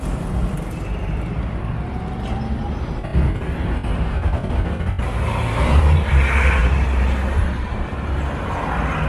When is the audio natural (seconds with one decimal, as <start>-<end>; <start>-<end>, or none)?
0.0-6.6; 8.1-9.1